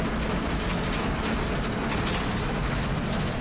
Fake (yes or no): no